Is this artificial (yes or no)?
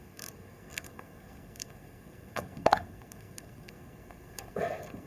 yes